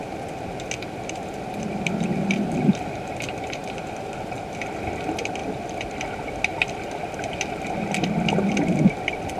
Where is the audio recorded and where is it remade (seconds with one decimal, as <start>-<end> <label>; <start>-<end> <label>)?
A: 0.0-2.1 recorded; 2.1-2.6 remade; 2.6-3.6 recorded; 3.6-4.2 remade; 4.2-9.4 recorded